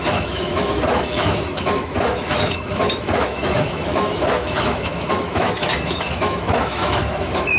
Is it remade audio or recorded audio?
remade